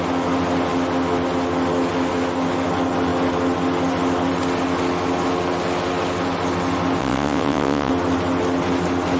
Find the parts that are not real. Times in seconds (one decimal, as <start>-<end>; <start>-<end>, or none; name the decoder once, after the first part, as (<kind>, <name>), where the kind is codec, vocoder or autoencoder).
7.0-7.9 (vocoder, WaveNeXt)